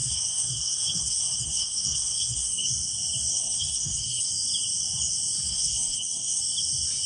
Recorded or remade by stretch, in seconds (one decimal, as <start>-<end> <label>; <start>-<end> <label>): 0.0-2.7 remade; 2.7-3.3 recorded; 3.3-4.3 remade; 4.3-5.5 recorded; 5.5-6.4 remade; 6.4-7.1 recorded

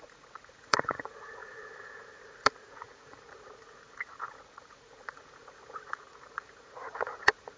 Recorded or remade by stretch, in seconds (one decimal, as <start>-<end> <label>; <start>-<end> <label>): 0.0-7.6 remade

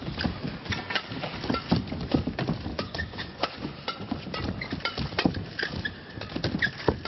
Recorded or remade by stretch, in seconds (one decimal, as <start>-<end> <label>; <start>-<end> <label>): 0.0-2.7 recorded; 2.7-4.2 remade; 4.2-7.1 recorded

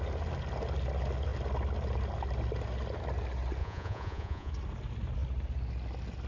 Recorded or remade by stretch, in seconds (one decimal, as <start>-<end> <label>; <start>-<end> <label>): 0.0-3.6 recorded; 3.6-4.5 remade; 4.5-6.3 recorded

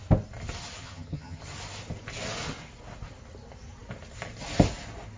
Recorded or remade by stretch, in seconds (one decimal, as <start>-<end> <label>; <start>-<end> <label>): 0.0-0.8 recorded; 0.8-1.4 remade; 1.4-5.2 recorded

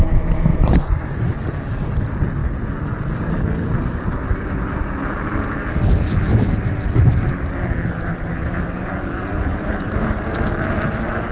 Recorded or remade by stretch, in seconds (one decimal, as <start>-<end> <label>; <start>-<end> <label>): 0.0-0.5 recorded; 0.5-1.3 remade; 1.3-11.3 recorded

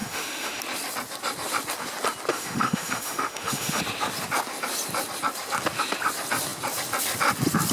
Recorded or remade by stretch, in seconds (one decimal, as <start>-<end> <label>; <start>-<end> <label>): 0.0-0.6 remade; 0.6-2.3 recorded; 2.3-3.8 remade; 3.8-7.7 recorded

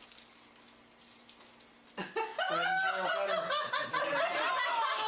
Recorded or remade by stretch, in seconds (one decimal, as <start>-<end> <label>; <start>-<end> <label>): 0.0-5.1 recorded